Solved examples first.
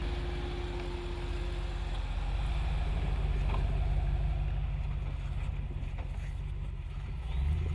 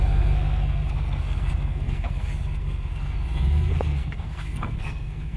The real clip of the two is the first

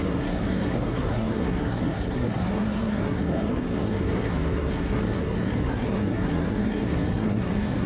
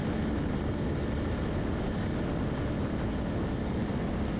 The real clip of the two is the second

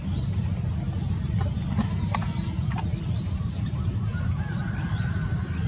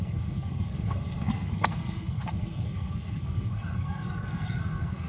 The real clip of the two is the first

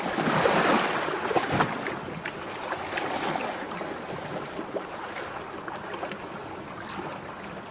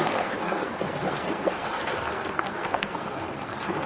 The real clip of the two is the first